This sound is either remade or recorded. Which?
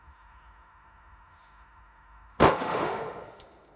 remade